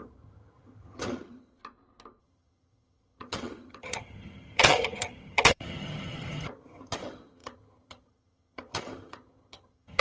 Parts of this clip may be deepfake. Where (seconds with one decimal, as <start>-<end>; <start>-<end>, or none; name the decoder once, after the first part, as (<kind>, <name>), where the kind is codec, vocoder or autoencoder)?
0.0-1.6 (vocoder, HiFi-GAN); 2.2-10.0